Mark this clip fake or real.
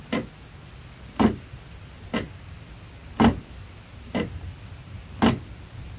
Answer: real